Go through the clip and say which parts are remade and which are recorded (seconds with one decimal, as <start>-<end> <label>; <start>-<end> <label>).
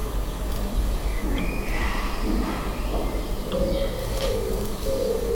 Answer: 0.0-1.4 remade; 1.4-4.0 recorded; 4.0-5.3 remade